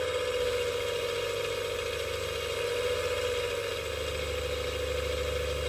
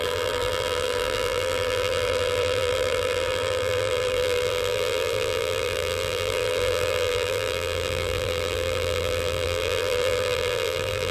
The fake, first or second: second